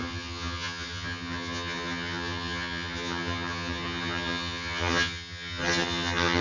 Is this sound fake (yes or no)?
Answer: yes